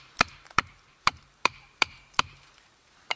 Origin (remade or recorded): remade